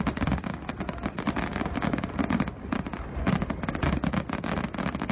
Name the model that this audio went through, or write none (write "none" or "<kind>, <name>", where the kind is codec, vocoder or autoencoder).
none